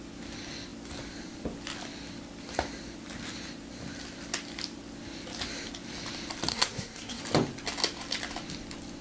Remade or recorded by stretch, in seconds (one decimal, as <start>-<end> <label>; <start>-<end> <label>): 0.0-6.5 recorded; 6.5-7.2 remade; 7.2-9.0 recorded